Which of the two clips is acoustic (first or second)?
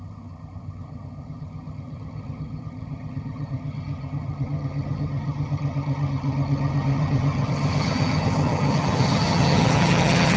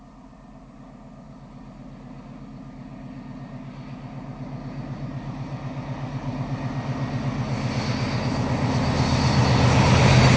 second